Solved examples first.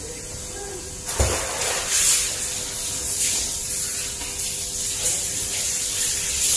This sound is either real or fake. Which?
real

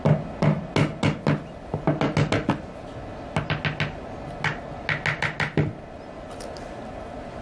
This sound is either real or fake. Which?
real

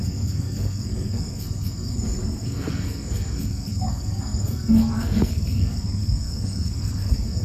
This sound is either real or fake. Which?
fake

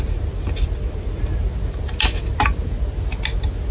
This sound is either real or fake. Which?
real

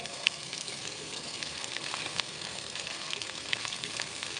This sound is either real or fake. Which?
fake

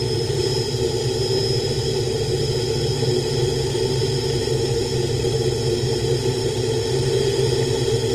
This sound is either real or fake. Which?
real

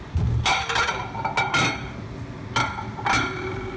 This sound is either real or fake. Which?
real